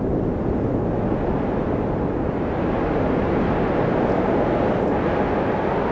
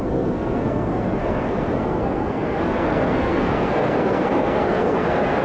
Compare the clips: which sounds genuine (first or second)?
first